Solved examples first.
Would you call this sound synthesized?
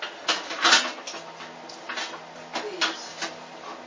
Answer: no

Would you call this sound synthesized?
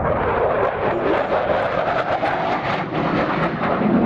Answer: no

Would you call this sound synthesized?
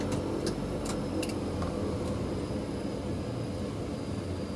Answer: no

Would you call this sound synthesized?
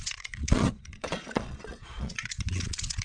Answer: yes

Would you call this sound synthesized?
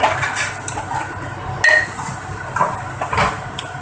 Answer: no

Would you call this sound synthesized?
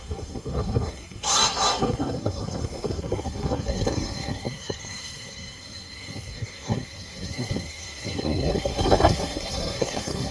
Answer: yes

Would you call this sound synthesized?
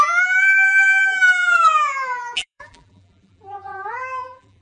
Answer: yes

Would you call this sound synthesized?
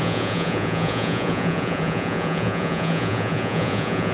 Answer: yes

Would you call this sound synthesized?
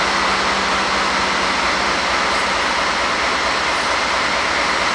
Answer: no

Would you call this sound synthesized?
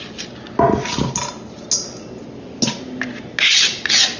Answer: no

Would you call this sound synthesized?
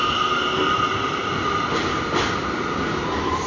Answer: no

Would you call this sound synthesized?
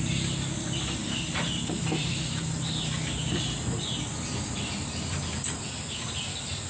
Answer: no